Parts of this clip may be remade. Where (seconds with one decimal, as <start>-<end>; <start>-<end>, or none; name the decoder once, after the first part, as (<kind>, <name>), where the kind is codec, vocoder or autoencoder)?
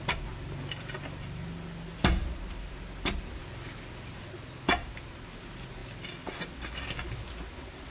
none